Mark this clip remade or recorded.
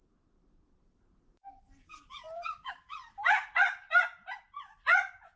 remade